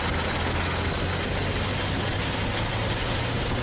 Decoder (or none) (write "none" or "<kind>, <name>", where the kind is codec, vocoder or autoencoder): none